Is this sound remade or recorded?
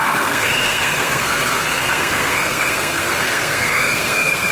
remade